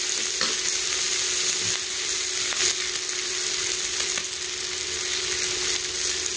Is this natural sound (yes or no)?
yes